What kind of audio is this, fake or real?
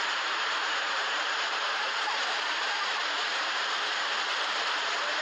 fake